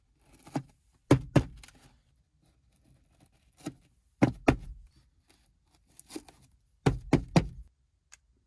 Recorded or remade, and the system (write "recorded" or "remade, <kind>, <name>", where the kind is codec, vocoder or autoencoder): recorded